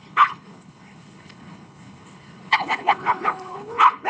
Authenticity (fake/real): fake